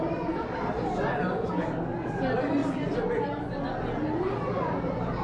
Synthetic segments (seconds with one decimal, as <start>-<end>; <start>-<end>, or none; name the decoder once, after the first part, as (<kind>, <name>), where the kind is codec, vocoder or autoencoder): none